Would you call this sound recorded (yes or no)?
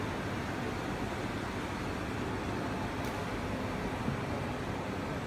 yes